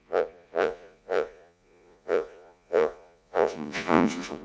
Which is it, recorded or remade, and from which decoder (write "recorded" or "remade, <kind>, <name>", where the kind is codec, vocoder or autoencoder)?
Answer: remade, vocoder, Vocos